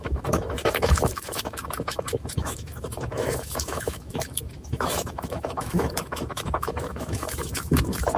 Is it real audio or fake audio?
fake